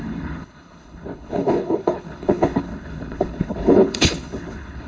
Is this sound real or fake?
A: fake